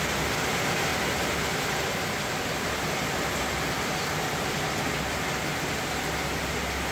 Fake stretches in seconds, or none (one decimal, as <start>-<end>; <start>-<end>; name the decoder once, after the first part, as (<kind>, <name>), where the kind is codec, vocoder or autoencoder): none